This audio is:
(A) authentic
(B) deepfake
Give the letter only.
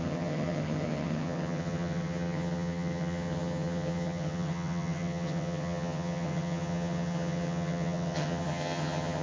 B